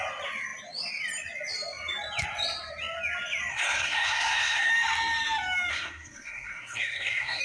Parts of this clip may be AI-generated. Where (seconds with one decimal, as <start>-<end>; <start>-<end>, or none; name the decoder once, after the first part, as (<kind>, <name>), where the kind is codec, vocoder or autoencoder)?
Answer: 3.5-4.7 (codec, SNAC); 5.7-7.4